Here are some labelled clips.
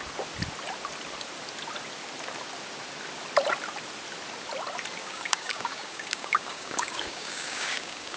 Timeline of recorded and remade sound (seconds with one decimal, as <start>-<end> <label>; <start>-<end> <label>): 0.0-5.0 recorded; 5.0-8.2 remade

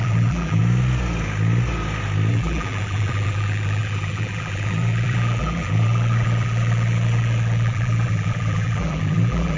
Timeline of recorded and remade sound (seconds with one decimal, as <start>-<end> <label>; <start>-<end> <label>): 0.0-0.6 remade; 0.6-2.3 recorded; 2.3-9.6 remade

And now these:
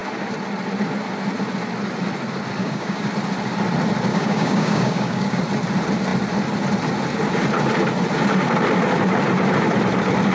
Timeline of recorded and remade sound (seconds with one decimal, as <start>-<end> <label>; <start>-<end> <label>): 0.0-2.6 recorded; 2.6-3.1 remade; 3.1-4.1 recorded; 4.1-5.4 remade; 5.4-10.3 recorded